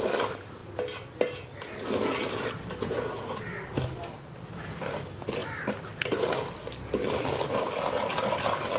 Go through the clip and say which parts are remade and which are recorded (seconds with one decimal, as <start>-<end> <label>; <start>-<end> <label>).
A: 0.0-8.8 recorded